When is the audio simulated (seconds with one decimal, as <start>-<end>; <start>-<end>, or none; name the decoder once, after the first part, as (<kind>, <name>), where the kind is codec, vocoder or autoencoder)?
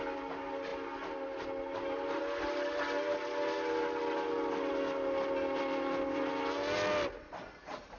none